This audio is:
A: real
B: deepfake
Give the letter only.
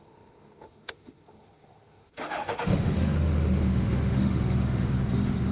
B